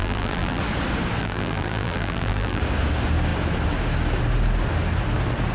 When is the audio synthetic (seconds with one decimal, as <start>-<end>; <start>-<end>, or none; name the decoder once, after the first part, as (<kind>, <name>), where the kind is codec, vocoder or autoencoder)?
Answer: 0.0-0.6 (vocoder, BigVGAN v2); 1.2-2.6